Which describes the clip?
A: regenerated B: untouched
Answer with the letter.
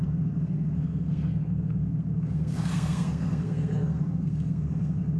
A